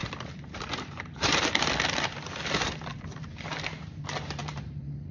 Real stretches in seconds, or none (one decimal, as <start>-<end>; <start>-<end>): 1.4-2.9; 3.5-4.4

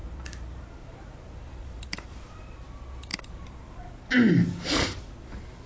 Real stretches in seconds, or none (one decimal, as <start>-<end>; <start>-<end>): 2.4-3.1; 3.9-5.7

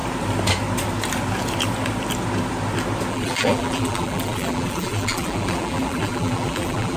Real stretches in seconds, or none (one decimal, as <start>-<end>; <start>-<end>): 0.0-3.1

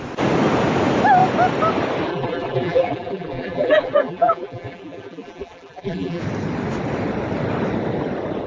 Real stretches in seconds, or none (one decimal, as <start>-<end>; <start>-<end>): 0.0-2.1; 6.2-8.5